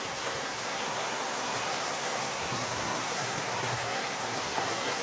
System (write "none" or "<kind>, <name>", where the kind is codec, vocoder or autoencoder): codec, SNAC